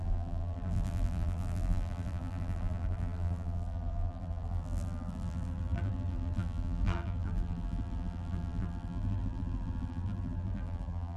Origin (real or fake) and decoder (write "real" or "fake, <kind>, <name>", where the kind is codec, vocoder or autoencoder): fake, vocoder, BigVGAN v2